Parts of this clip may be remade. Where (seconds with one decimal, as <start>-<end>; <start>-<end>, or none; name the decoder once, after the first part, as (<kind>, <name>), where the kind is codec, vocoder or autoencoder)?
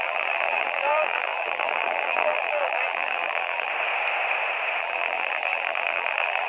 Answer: 0.0-3.7 (vocoder, BigVGAN v2); 4.8-6.5